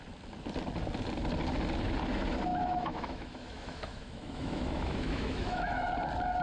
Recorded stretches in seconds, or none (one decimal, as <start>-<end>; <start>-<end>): 0.0-2.5; 5.9-6.4